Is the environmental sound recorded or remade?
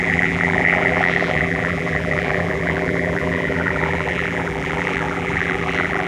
remade